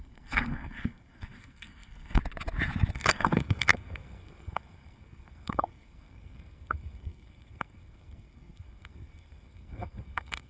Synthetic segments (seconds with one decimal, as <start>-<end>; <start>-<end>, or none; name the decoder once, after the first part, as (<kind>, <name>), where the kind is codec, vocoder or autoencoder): 0.0-2.2 (codec, SNAC); 2.9-10.5